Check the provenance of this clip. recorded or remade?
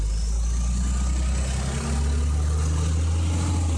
recorded